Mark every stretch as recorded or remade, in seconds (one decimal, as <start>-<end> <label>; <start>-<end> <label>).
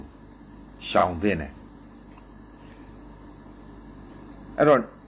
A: 0.0-5.1 recorded